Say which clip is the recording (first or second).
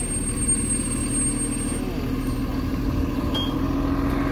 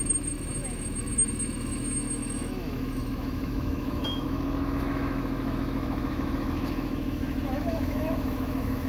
first